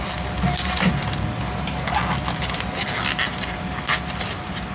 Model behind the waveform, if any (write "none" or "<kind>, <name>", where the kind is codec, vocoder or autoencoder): none